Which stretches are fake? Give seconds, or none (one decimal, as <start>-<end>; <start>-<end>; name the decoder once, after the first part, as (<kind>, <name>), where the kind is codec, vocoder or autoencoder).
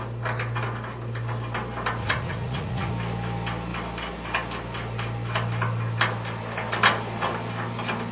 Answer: 2.0-2.9 (vocoder, Vocos)